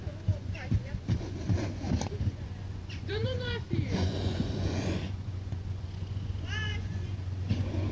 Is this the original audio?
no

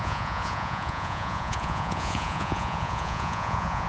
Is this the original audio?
no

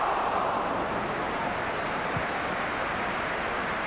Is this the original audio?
yes